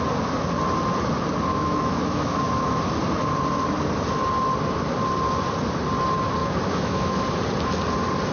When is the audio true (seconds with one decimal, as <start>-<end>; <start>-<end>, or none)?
0.0-1.5; 2.8-6.4; 7.2-8.3